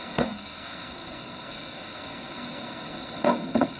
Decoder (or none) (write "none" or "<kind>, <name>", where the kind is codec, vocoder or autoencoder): codec, SNAC